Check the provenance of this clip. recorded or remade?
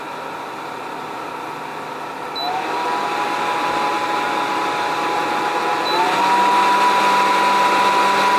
recorded